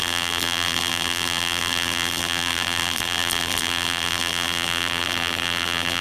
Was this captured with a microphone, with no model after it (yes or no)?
no